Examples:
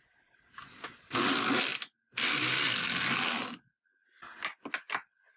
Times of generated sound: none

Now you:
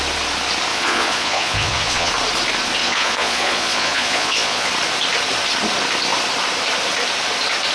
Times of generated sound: 0.7-2.1; 2.8-4.7

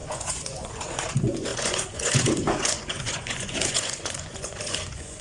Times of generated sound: 0.0-5.2

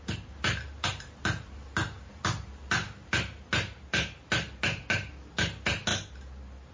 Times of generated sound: none

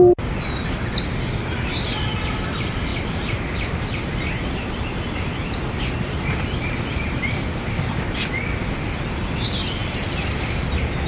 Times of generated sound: none

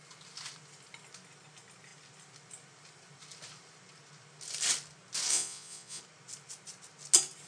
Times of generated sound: 5.3-6.0

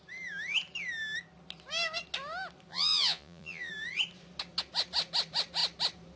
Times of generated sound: 2.7-3.7